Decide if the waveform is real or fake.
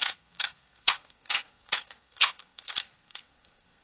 fake